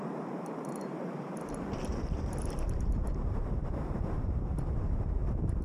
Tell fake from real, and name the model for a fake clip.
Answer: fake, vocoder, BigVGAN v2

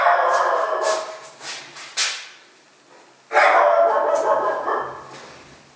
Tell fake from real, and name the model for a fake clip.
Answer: real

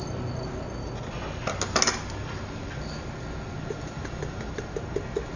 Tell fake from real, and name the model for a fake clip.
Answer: real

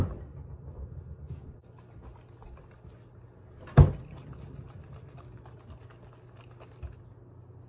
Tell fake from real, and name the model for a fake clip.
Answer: real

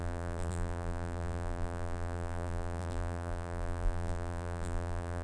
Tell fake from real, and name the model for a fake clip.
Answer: fake, vocoder, BigVGAN v2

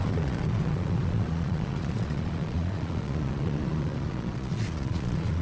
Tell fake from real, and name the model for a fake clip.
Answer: fake, vocoder, Vocos